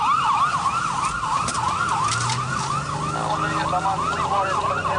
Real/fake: real